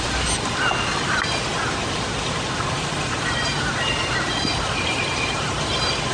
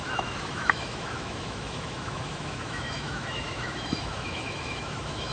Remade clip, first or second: second